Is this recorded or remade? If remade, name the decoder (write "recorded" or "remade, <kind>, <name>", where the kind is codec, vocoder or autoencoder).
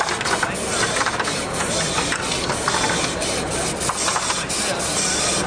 recorded